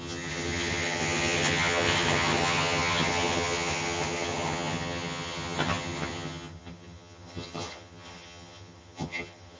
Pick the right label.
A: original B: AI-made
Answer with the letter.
B